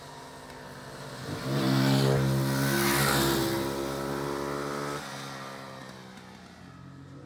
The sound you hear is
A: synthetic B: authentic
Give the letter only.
B